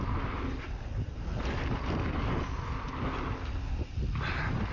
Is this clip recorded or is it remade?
recorded